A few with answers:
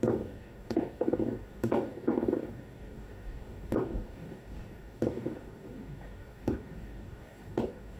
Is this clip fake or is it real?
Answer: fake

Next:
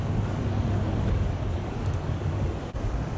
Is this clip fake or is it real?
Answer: fake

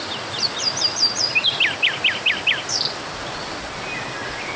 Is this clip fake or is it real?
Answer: real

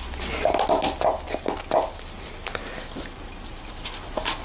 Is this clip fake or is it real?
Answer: real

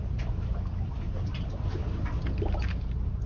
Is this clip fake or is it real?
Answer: real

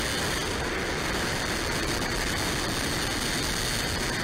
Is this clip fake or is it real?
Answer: real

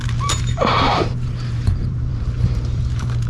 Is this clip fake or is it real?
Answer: fake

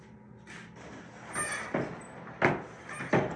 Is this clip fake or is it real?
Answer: real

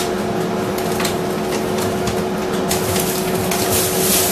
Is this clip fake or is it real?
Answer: real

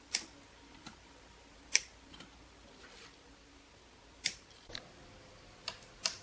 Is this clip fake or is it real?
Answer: real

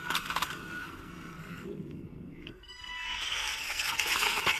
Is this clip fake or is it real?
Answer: fake